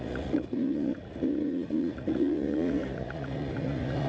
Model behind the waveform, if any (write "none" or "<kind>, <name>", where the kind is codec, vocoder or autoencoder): vocoder, Vocos